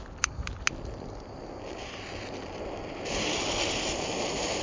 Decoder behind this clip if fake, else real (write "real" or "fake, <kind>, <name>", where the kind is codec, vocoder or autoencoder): real